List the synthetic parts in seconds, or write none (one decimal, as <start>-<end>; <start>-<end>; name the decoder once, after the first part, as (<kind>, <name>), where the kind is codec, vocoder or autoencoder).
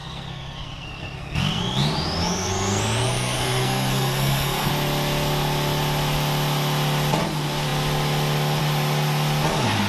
0.0-1.6 (codec, SNAC); 2.2-4.7